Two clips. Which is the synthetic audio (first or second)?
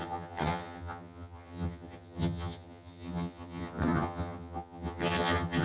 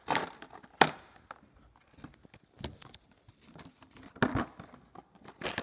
first